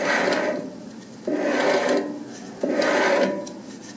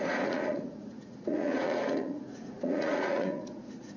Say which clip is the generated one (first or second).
second